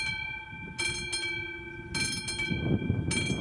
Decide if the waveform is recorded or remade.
recorded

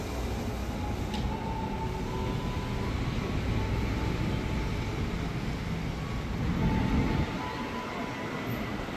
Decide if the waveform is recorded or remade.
recorded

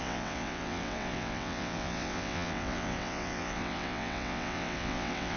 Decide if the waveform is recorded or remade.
remade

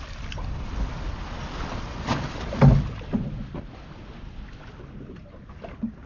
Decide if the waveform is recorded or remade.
recorded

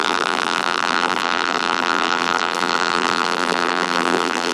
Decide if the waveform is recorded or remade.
remade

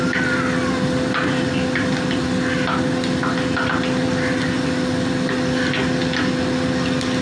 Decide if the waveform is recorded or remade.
recorded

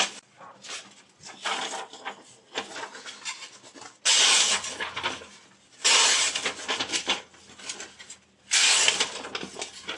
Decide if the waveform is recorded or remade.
recorded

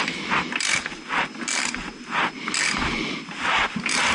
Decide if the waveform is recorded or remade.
recorded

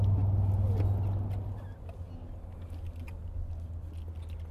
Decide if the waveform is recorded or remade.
recorded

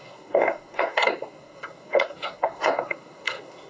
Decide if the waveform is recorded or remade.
remade